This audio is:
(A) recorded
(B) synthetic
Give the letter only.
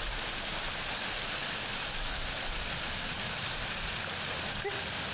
A